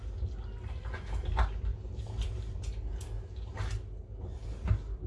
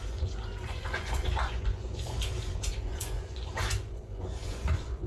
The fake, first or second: second